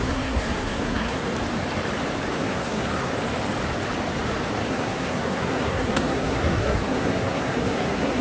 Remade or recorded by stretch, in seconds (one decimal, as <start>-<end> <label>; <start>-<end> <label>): 0.0-1.3 remade; 1.3-2.3 recorded; 2.3-3.1 remade; 3.1-4.7 recorded; 4.7-8.2 remade